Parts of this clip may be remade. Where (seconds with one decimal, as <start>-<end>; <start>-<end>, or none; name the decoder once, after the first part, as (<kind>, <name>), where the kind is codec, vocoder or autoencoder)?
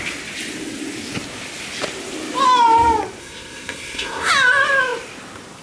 3.2-4.3 (codec, SNAC)